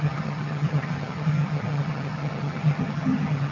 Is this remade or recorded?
remade